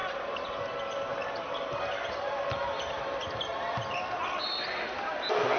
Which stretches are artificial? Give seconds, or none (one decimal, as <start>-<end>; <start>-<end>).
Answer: none